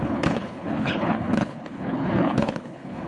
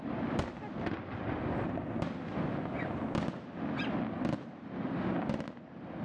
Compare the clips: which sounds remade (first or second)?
first